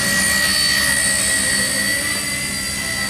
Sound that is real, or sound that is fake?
real